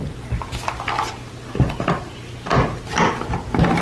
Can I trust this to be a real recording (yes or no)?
yes